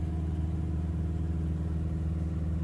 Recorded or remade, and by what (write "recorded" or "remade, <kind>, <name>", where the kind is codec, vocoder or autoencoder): recorded